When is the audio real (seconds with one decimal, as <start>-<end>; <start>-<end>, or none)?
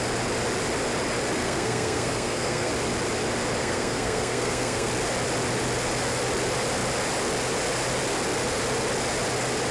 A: 0.0-1.4; 2.7-3.6; 4.9-9.7